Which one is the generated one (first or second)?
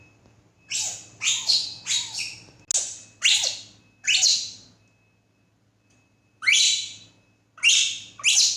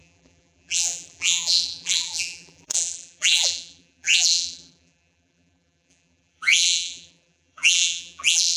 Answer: second